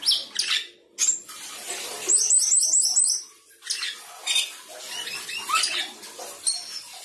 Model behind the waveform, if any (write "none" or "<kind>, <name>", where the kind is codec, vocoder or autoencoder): none